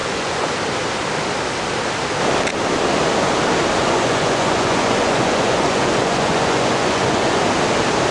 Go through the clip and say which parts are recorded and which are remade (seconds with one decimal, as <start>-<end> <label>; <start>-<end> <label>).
0.0-0.5 remade; 0.5-3.8 recorded; 3.8-7.4 remade; 7.4-8.1 recorded